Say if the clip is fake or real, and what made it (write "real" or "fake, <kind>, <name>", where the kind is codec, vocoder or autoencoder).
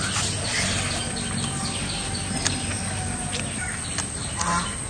real